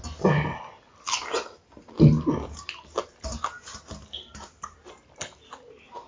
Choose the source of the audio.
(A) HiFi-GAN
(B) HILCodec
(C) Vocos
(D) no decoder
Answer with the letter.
D